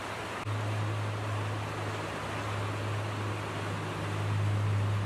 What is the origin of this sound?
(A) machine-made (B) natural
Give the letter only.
B